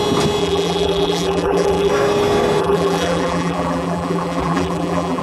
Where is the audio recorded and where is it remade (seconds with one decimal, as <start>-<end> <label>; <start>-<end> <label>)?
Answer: 0.0-0.4 recorded; 0.4-1.9 remade; 1.9-2.6 recorded; 2.6-5.2 remade

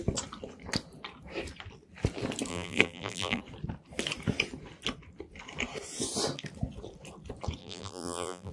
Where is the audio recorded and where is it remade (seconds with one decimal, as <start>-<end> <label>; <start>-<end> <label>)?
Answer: 0.0-2.5 recorded; 2.5-3.4 remade; 3.4-7.6 recorded; 7.6-8.5 remade

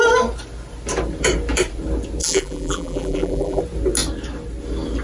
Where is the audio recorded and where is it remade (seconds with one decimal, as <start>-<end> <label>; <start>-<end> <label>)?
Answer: 0.0-2.2 recorded; 2.2-3.6 remade; 3.6-5.0 recorded

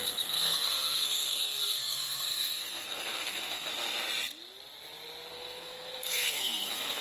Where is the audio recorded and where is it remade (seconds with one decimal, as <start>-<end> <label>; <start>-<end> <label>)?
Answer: 0.0-3.7 remade; 3.7-5.3 recorded; 5.3-7.0 remade